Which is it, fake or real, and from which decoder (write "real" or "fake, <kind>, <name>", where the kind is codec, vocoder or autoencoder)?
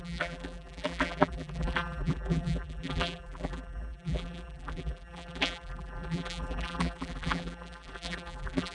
fake, vocoder, BigVGAN v2